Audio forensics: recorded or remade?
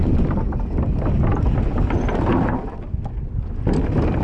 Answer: recorded